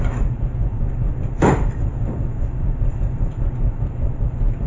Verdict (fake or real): fake